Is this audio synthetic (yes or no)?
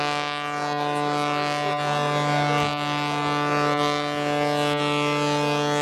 no